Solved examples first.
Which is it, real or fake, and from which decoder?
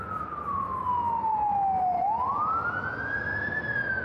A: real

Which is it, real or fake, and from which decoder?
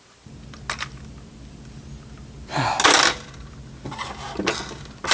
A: real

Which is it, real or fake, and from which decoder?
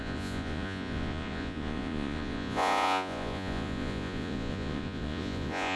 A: fake, vocoder, Vocos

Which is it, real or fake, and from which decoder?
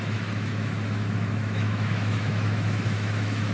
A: fake, autoencoder, DAC-VAE